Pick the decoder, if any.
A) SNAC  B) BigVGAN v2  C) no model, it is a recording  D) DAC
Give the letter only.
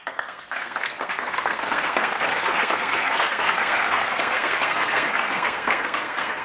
A